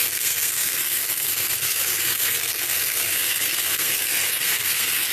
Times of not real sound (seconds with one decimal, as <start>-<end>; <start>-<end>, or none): 0.0-5.1